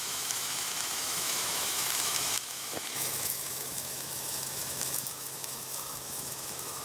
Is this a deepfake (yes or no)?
yes